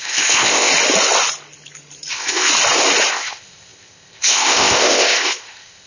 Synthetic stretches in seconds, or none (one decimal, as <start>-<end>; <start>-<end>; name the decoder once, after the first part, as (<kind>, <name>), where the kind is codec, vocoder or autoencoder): 0.0-0.7 (codec, ZipCodec); 2.1-2.5; 3.1-5.9